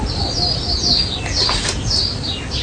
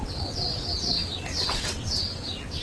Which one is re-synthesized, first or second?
second